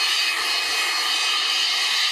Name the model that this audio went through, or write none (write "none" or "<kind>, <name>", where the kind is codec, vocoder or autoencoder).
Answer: none